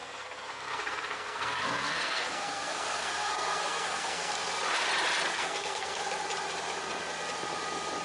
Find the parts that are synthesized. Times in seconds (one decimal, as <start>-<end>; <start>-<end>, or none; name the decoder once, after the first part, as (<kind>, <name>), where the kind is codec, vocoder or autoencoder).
0.0-4.3 (codec, SNAC); 5.3-6.0